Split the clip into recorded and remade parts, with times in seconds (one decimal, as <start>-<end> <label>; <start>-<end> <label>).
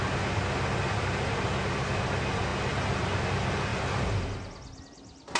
0.0-5.4 recorded